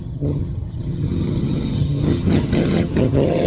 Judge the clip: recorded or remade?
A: remade